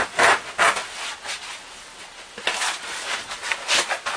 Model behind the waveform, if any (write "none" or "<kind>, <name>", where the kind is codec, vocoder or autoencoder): none